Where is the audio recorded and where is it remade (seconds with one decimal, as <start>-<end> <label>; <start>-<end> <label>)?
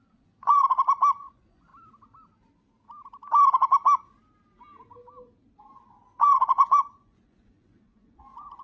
0.0-0.6 remade; 0.6-1.2 recorded; 1.2-1.7 remade; 1.7-6.2 recorded; 6.2-8.6 remade